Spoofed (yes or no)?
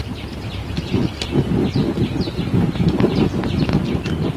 no